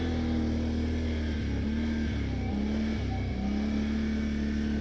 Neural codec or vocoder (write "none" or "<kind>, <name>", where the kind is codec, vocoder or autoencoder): none